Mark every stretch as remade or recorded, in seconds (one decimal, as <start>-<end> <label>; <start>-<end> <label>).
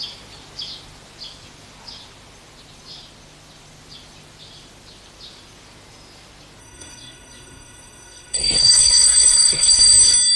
0.0-6.6 recorded; 6.6-9.8 remade; 9.8-10.4 recorded